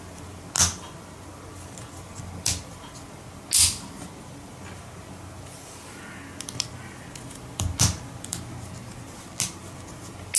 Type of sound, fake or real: real